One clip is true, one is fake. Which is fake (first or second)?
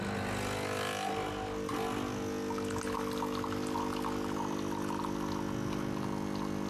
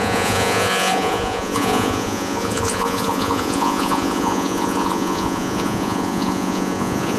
second